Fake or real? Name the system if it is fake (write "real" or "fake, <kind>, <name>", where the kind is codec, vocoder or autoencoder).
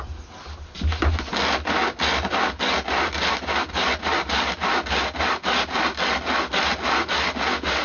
real